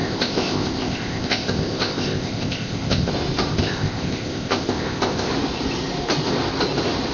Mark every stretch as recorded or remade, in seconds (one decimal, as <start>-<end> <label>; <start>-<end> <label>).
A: 0.0-3.1 remade; 3.1-3.5 recorded; 3.5-5.3 remade; 5.3-7.1 recorded